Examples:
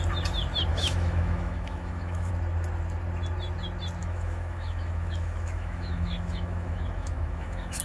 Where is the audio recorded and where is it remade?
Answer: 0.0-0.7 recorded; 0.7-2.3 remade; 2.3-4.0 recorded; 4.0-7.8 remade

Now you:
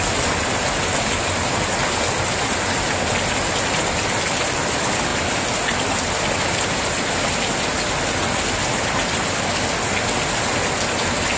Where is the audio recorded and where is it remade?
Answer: 0.0-11.4 recorded